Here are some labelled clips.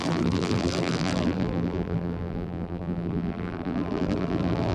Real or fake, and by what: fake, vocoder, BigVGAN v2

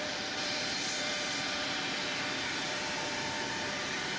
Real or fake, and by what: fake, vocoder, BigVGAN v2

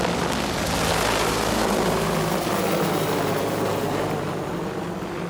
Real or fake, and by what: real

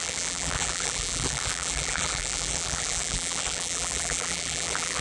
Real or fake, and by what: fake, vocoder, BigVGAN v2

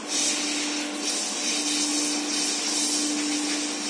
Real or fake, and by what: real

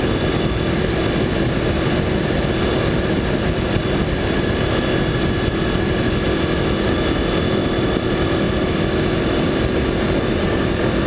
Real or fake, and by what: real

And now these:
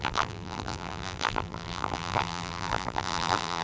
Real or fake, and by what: fake, vocoder, BigVGAN v2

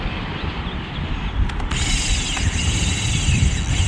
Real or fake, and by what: fake, vocoder, BigVGAN v2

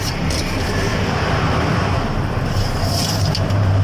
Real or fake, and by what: fake, vocoder, BigVGAN v2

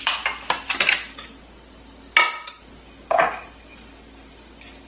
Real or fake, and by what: real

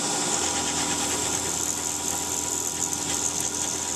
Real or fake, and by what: real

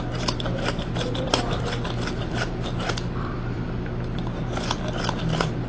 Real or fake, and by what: fake, vocoder, BigVGAN v2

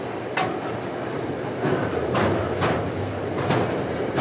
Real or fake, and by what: real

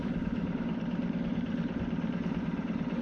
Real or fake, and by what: fake, vocoder, BigVGAN v2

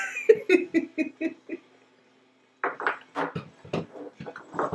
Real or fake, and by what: real